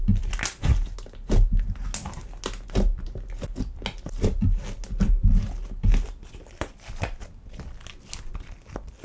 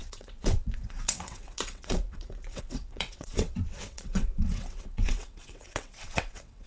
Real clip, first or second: first